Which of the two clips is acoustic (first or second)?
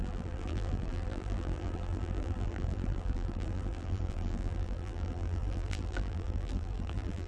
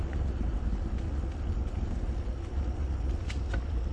second